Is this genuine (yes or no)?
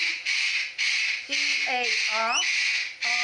yes